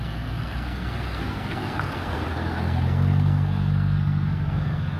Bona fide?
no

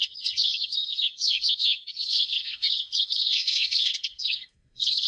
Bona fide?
no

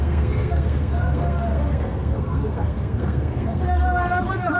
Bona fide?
no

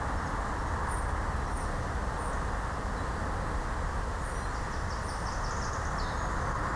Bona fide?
yes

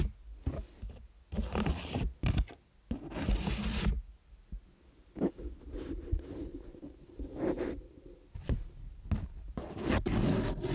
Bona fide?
yes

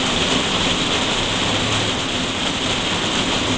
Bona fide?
yes